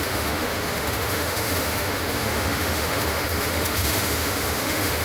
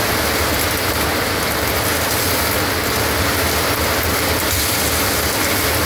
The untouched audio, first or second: second